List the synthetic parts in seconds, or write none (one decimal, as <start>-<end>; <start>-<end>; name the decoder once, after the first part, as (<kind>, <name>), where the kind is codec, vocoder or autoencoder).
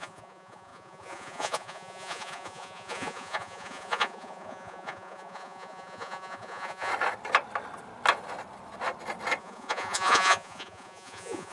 0.0-6.9 (vocoder, Vocos); 9.4-11.5